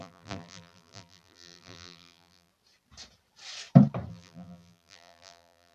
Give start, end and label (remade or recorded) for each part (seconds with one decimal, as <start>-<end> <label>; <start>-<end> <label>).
0.0-2.5 remade; 2.5-4.1 recorded; 4.1-5.7 remade